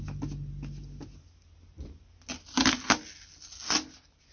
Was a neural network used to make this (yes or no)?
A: no